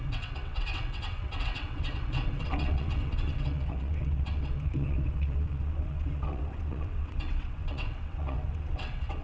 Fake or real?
fake